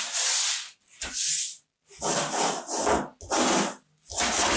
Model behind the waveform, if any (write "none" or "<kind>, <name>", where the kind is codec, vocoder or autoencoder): none